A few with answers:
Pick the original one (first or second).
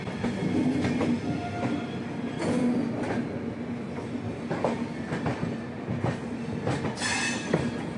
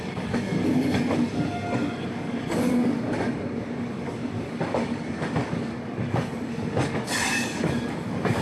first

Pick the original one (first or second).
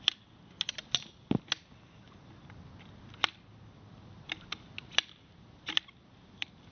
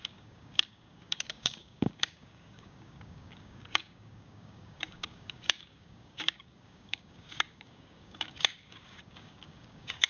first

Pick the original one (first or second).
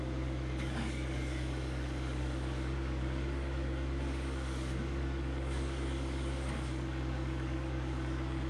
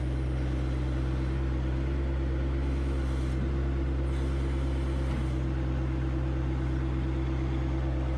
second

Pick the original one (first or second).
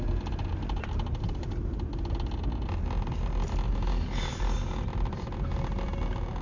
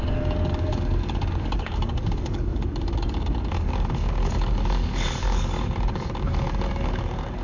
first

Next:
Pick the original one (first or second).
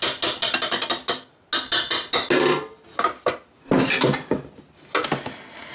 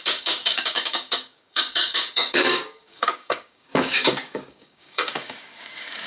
first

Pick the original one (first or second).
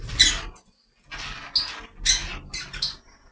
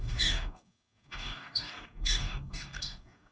first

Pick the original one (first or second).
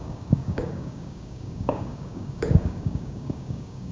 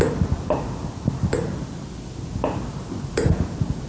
second